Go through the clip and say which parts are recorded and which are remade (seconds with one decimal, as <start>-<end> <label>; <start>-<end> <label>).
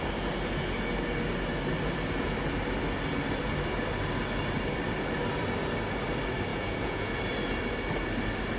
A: 0.0-6.5 recorded; 6.5-7.1 remade; 7.1-8.6 recorded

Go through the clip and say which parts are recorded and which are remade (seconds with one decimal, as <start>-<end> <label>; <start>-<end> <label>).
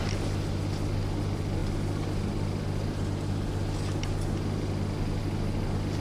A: 0.0-6.0 recorded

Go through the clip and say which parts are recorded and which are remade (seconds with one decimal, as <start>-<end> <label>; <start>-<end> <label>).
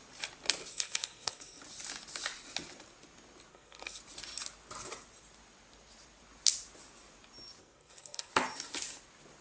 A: 0.0-0.7 recorded; 0.7-1.6 remade; 1.6-3.5 recorded; 3.5-4.0 remade; 4.0-7.6 recorded; 7.6-8.3 remade; 8.3-9.4 recorded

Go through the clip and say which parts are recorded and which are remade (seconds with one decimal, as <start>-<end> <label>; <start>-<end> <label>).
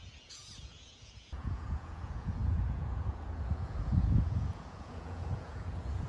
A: 0.0-6.1 remade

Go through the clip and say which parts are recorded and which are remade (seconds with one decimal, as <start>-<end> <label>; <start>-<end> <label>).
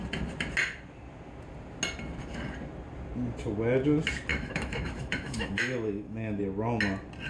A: 0.0-4.3 recorded; 4.3-6.4 remade; 6.4-7.3 recorded